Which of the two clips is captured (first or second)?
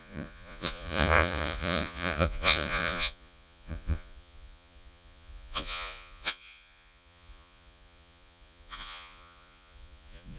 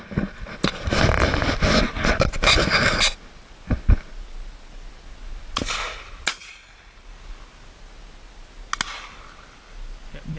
second